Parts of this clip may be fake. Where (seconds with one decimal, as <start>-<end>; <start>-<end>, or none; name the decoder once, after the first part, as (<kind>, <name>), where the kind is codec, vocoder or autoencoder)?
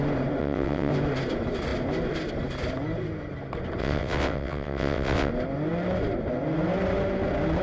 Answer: 0.4-0.9 (vocoder, WaveNeXt); 3.8-5.3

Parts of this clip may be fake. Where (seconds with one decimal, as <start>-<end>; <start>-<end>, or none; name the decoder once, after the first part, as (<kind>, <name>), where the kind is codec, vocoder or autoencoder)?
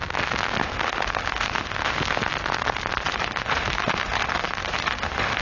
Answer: 0.6-1.9 (autoencoder, DAC-VAE); 3.1-5.4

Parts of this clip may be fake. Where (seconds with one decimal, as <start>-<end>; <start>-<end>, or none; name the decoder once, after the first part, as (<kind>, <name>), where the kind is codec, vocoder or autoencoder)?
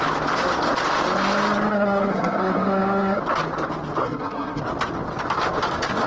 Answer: 1.7-3.2 (codec, SNAC); 4.0-4.6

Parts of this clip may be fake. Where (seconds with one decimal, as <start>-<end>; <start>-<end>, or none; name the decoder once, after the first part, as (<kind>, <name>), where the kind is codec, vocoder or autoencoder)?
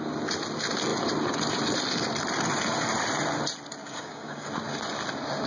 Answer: 3.8-4.5 (codec, DAC)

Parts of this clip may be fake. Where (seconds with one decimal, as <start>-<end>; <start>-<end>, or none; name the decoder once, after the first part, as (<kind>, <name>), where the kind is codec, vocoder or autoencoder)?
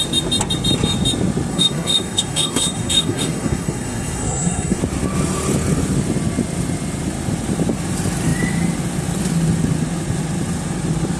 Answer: 1.5-4.8 (codec, SNAC)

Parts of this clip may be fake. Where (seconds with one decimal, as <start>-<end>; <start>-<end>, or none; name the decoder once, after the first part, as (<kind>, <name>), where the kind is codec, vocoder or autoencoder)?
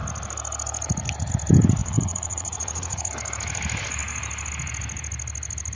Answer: 1.8-3.1 (vocoder, Vocos)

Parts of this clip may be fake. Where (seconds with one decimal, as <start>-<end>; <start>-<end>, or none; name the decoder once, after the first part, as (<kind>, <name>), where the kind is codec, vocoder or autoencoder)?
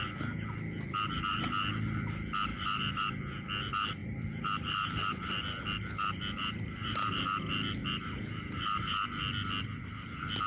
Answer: 2.5-3.2 (vocoder, BigVGAN v2); 4.0-5.1; 6.4-7.2; 7.8-8.8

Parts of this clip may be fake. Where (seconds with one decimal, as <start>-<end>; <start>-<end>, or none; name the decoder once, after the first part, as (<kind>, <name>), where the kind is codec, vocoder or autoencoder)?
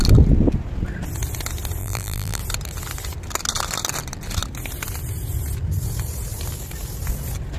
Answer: 1.8-2.4 (vocoder, BigVGAN v2)